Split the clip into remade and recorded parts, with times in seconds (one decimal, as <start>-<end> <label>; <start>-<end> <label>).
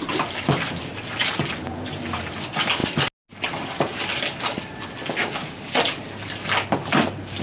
0.0-7.4 recorded